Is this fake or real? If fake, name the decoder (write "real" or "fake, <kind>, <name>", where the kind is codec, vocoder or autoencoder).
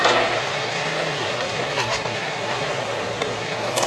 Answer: fake, codec, SNAC